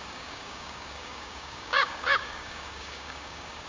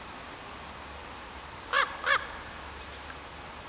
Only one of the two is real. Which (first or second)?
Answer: second